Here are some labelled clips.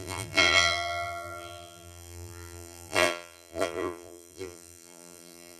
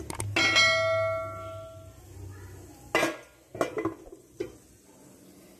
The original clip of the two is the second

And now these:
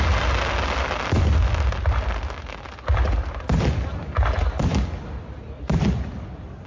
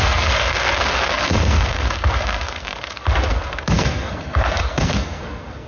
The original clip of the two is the first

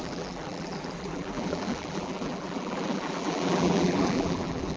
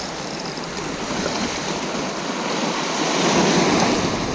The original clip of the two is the second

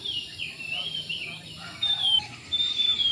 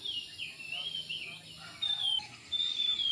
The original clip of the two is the second